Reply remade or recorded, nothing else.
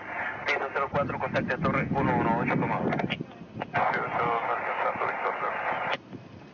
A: recorded